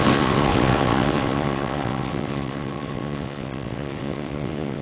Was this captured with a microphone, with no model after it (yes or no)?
no